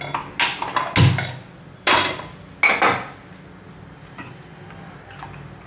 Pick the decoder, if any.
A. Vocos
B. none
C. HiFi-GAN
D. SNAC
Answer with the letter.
B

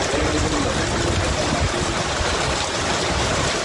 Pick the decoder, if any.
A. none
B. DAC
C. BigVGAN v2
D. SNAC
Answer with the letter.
A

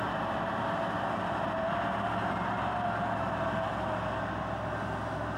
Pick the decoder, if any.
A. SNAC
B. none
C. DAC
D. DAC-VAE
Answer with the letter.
B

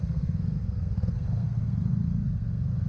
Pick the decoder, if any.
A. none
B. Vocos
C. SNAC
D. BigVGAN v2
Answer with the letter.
C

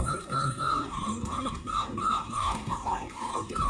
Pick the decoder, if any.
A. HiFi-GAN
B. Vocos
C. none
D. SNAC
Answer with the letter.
D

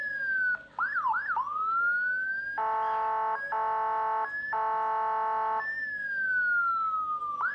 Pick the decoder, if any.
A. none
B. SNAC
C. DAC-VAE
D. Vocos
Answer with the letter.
A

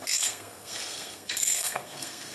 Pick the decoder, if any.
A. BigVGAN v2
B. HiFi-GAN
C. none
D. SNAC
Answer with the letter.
D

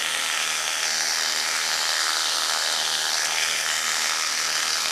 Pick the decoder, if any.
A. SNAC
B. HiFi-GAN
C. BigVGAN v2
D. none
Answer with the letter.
A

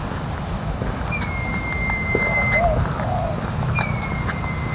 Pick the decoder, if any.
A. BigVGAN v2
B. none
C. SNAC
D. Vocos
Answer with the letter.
B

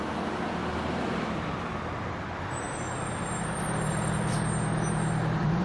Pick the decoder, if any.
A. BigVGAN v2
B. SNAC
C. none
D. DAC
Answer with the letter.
C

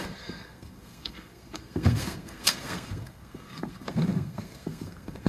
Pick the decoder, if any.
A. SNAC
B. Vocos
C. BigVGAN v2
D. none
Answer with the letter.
A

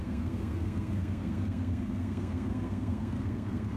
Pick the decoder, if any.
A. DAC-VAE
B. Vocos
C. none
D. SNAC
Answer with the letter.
D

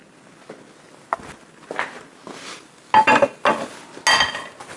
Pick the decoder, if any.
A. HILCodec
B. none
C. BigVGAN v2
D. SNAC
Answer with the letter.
B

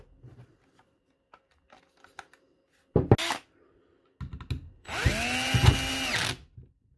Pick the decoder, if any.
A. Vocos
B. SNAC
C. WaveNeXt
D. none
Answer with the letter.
D